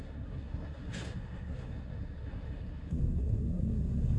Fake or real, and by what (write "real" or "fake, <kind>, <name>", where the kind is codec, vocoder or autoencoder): fake, codec, SNAC